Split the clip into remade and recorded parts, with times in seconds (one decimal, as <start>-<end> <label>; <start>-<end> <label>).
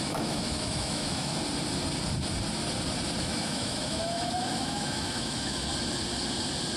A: 0.0-1.3 remade; 1.3-3.2 recorded; 3.2-5.7 remade; 5.7-6.8 recorded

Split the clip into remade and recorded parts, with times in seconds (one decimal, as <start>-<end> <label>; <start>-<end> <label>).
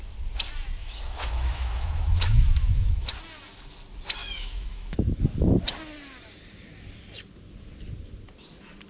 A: 0.0-0.8 recorded; 0.8-3.1 remade; 3.1-4.2 recorded; 4.2-5.5 remade; 5.5-8.9 recorded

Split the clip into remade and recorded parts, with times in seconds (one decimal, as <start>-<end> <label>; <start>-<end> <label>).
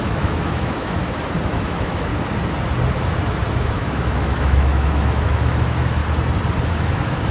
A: 0.0-1.0 remade; 1.0-1.5 recorded; 1.5-2.1 remade; 2.1-3.6 recorded; 3.6-6.0 remade; 6.0-6.7 recorded; 6.7-7.3 remade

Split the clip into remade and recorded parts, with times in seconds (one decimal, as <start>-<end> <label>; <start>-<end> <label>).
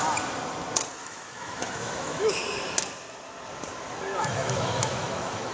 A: 0.0-1.0 recorded; 1.0-2.4 remade; 2.4-4.3 recorded; 4.3-5.5 remade